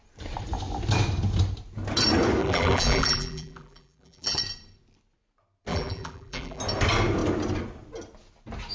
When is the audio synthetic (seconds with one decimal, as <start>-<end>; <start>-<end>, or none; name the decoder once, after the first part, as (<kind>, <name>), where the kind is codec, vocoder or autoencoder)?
2.4-4.4 (vocoder, BigVGAN v2); 5.7-6.6